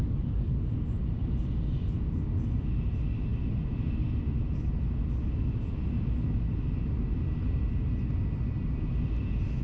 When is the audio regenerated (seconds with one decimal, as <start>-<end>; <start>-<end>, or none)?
0.0-0.7